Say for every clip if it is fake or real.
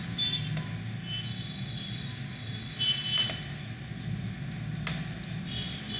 real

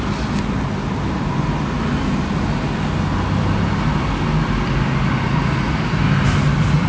real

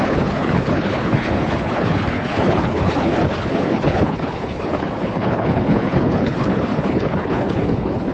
fake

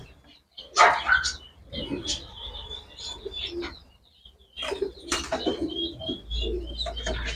real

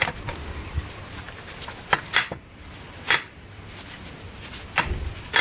real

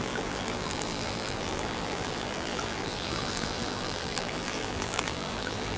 fake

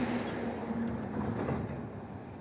real